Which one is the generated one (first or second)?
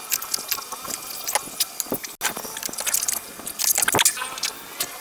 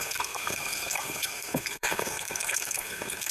second